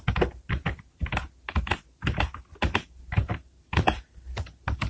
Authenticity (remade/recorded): recorded